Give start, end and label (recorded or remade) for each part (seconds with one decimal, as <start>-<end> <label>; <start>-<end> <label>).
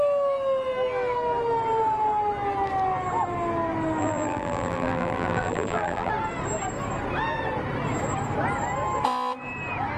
0.0-4.0 recorded; 4.0-6.1 remade; 6.1-10.0 recorded